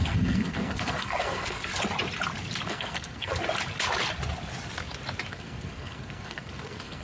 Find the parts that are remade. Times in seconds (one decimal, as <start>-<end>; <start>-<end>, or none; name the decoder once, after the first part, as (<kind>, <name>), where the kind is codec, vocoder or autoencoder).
0.0-1.7 (codec, SNAC); 2.7-3.3; 5.3-7.0